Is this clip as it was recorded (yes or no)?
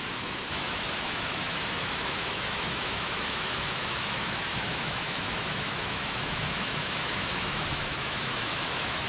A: no